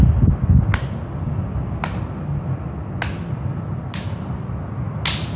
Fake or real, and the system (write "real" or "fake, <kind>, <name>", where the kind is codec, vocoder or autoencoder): real